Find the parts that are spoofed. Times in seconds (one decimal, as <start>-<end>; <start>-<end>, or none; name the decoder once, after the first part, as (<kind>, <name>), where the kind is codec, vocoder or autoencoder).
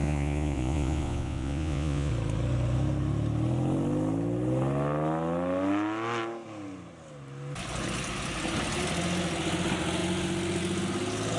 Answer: 0.0-2.1 (vocoder, Vocos)